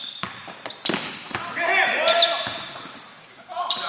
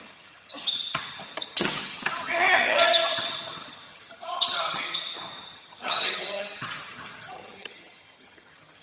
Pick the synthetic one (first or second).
second